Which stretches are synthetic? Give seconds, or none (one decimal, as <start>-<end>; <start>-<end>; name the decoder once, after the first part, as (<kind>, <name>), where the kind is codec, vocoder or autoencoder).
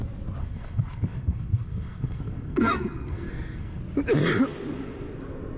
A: 0.4-3.8 (codec, SNAC)